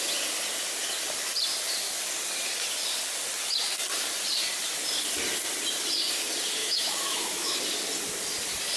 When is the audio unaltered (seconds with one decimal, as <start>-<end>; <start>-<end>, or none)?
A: 0.0-6.6; 7.6-8.8